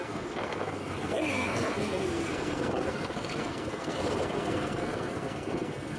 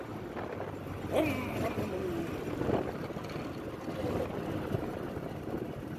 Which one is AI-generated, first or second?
first